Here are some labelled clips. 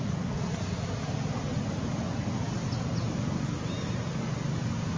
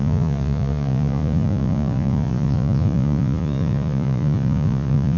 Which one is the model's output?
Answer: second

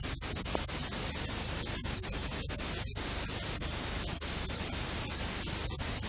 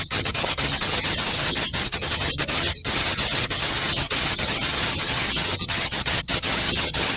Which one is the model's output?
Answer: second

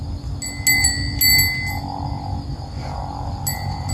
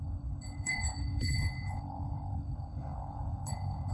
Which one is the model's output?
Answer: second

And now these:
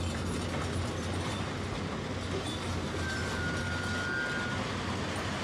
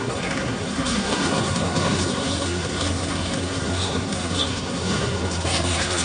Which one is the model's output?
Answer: second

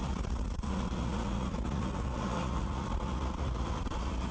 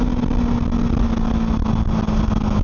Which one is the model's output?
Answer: first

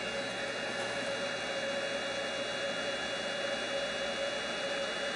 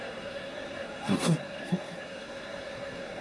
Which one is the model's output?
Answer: second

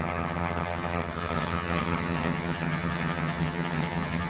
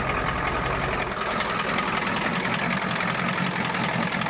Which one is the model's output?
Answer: first